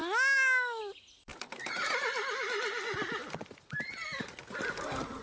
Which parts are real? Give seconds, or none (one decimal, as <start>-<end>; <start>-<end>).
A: 0.8-5.2